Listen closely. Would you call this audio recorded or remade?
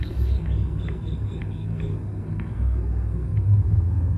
remade